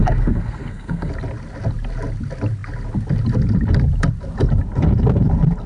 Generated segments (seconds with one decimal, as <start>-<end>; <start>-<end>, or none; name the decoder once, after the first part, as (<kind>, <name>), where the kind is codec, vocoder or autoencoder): 0.0-1.1 (codec, SNAC)